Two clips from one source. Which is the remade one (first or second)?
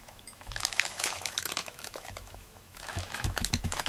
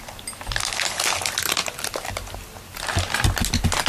first